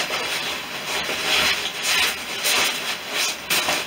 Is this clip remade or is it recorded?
recorded